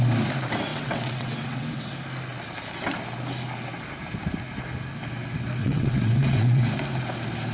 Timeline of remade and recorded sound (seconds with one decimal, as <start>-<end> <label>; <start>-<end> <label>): 0.0-0.7 recorded; 0.7-1.9 remade; 1.9-5.6 recorded; 5.6-6.6 remade; 6.6-7.5 recorded